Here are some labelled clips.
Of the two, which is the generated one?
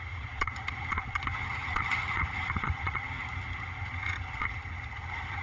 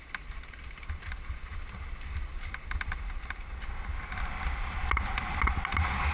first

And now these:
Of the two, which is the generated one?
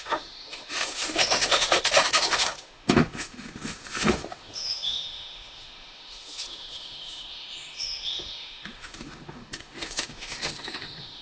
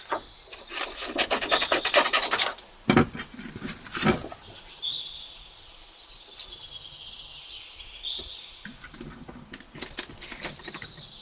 first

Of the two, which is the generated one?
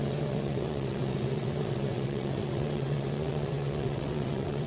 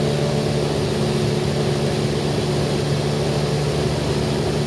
first